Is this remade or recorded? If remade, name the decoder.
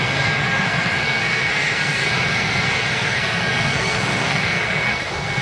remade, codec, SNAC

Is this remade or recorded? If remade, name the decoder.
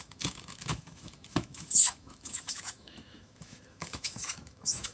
remade, autoencoder, DAC-VAE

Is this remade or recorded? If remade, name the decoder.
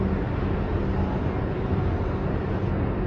recorded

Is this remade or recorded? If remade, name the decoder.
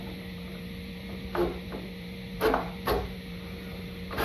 recorded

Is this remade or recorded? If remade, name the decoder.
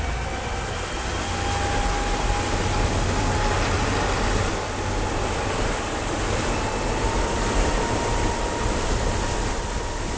recorded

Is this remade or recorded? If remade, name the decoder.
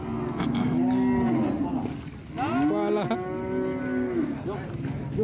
recorded